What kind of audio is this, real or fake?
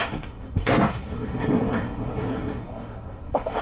fake